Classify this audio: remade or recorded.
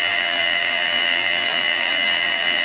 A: remade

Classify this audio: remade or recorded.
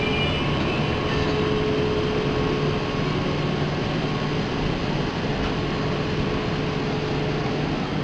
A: recorded